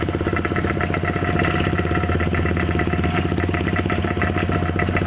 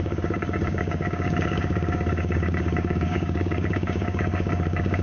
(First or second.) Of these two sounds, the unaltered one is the first